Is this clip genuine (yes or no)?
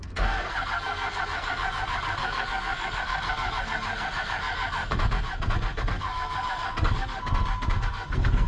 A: no